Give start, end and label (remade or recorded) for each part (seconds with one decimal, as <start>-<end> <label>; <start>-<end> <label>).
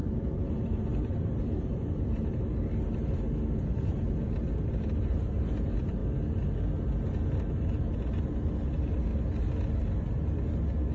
0.0-6.0 remade; 6.0-7.9 recorded; 7.9-9.1 remade; 9.1-10.9 recorded